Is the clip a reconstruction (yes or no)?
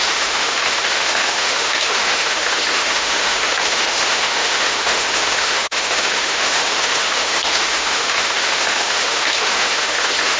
yes